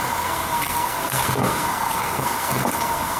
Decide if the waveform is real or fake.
fake